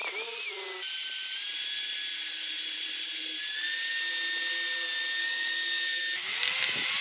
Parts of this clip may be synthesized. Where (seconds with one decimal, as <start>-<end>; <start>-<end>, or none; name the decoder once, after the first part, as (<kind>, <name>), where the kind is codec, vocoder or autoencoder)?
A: 5.2-6.0 (codec, DAC)